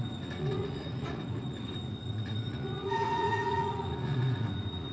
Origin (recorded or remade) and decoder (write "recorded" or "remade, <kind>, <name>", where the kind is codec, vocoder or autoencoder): remade, vocoder, Vocos